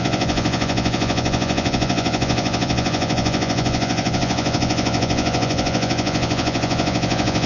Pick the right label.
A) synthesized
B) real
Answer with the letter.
A